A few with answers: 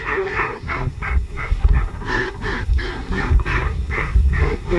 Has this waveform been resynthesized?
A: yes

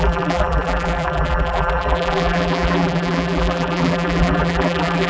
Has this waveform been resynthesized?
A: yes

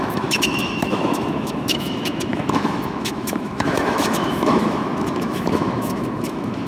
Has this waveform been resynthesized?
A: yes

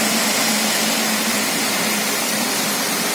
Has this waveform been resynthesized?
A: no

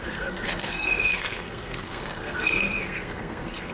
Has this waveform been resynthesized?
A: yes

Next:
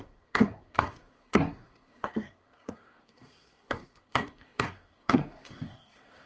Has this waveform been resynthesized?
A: yes